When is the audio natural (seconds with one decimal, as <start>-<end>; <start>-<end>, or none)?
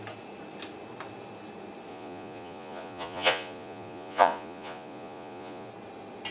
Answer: 0.0-1.9; 5.7-6.3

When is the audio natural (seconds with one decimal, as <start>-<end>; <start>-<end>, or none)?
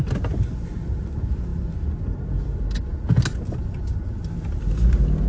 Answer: 0.0-5.3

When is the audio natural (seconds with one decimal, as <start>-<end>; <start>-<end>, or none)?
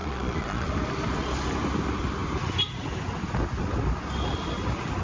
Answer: 0.7-5.0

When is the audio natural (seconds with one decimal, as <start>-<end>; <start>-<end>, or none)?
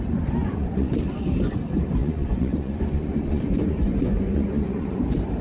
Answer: 0.0-0.4; 1.0-2.0; 5.0-5.4